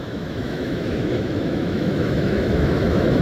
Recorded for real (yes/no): no